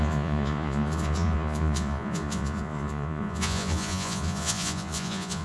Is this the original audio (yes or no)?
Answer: no